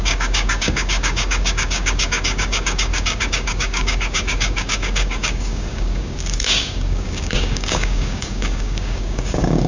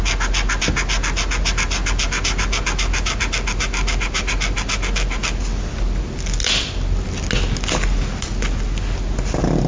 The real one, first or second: second